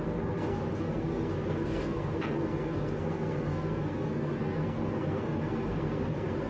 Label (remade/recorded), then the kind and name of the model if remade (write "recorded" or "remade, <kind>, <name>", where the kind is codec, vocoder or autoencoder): remade, codec, SNAC